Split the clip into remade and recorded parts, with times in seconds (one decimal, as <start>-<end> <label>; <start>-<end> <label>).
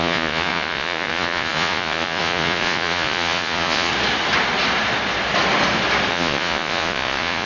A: 0.0-3.9 remade; 3.9-6.1 recorded; 6.1-7.5 remade